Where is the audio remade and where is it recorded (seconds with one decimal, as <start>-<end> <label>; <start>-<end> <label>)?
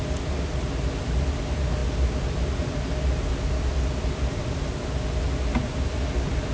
0.0-6.5 recorded